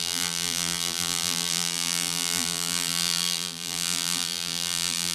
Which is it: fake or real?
fake